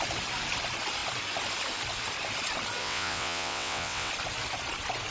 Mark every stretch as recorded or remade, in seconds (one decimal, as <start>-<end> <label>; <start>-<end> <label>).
0.0-2.8 recorded; 2.8-4.1 remade; 4.1-5.1 recorded